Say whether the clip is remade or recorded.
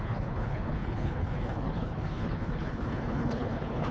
remade